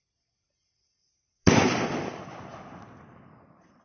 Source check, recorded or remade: recorded